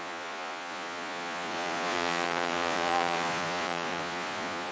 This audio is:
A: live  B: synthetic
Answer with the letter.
B